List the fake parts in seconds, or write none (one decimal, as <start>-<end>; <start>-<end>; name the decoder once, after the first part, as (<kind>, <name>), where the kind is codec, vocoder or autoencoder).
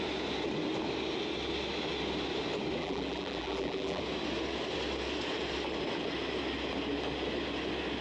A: 2.8-4.0 (vocoder, BigVGAN v2)